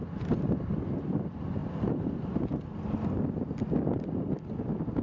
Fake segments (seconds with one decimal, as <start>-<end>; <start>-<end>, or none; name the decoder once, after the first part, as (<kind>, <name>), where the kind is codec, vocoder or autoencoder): none